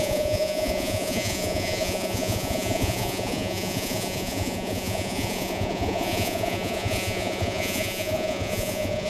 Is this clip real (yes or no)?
no